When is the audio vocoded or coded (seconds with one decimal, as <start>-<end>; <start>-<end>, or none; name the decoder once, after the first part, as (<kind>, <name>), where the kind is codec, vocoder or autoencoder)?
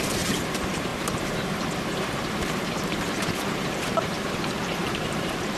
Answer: 0.0-5.6 (vocoder, BigVGAN v2)